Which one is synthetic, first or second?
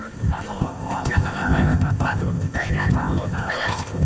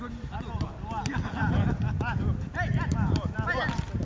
first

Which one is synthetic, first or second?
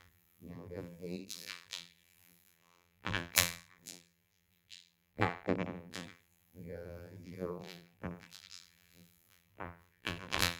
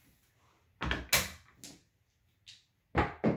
first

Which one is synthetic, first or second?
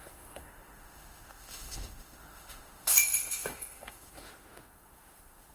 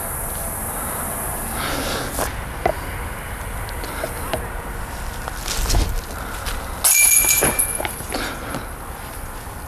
first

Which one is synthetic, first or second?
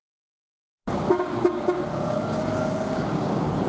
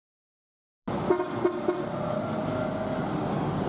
first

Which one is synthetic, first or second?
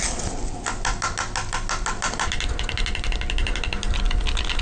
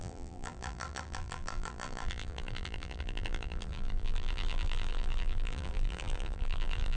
second